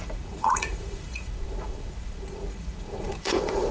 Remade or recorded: remade